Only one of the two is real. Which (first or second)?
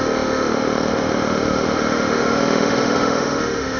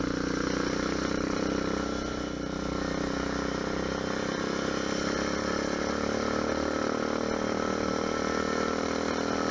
second